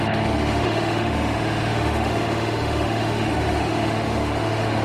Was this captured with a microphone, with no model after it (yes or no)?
no